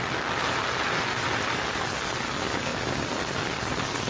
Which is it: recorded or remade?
recorded